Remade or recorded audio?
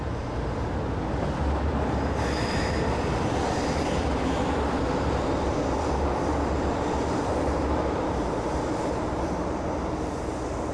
recorded